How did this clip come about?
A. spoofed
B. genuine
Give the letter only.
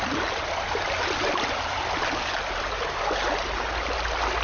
B